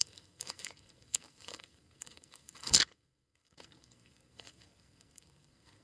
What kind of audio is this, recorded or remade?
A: remade